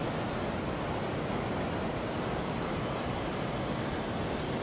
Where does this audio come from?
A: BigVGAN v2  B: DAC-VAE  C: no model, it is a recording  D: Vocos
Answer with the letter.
C